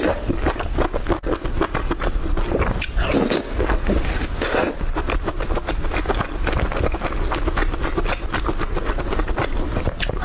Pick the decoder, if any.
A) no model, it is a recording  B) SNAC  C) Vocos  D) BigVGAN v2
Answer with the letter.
A